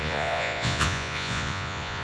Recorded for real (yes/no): no